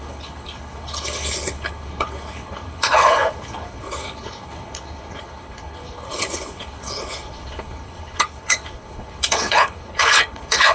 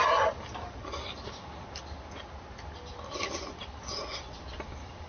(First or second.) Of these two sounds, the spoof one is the first